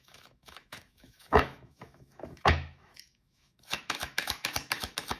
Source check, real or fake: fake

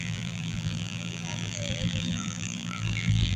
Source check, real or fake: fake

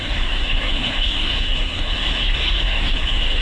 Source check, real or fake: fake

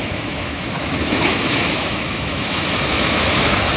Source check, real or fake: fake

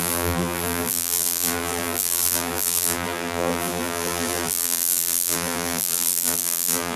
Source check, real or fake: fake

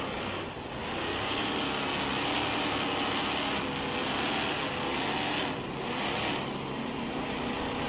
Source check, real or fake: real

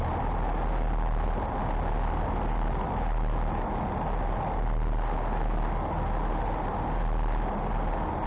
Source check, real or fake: real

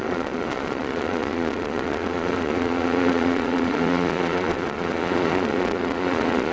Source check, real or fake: fake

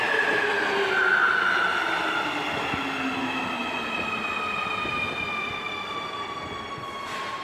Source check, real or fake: real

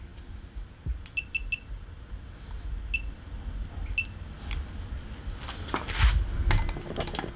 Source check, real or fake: real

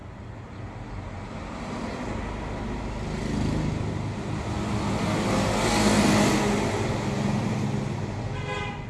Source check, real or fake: real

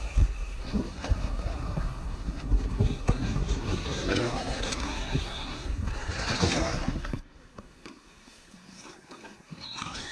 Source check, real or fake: fake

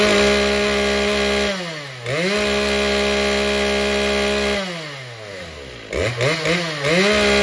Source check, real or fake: real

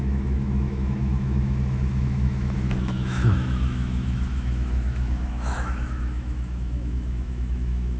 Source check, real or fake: fake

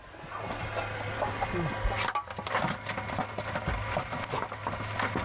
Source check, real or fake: real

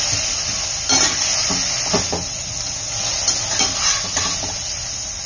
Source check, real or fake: real